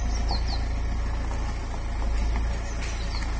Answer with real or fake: real